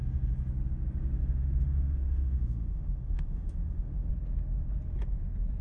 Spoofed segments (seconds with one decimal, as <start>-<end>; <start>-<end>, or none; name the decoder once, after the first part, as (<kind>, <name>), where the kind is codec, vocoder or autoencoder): 1.2-4.1 (autoencoder, DAC-VAE)